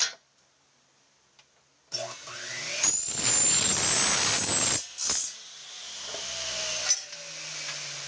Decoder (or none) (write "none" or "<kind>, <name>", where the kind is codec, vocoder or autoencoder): none